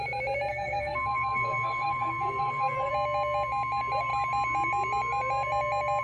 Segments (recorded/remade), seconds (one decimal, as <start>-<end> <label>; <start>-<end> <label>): 0.0-0.5 recorded; 0.5-2.9 remade; 2.9-6.0 recorded